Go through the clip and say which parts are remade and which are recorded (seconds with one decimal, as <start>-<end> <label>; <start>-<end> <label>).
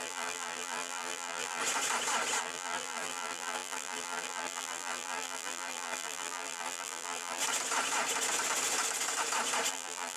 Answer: 0.0-1.6 remade; 1.6-2.4 recorded; 2.4-7.4 remade; 7.4-9.7 recorded; 9.7-10.2 remade